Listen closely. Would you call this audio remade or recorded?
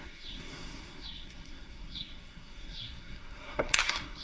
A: remade